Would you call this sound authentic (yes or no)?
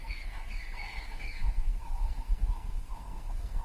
no